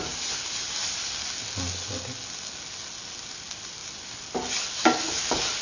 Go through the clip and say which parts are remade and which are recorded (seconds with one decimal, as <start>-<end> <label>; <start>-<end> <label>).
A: 0.0-5.6 recorded